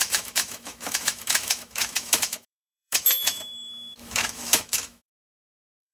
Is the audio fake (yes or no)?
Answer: yes